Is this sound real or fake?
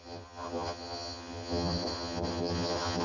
fake